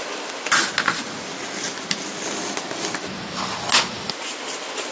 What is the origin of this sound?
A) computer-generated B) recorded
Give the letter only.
B